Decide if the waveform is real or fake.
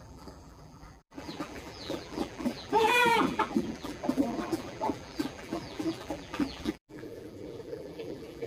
fake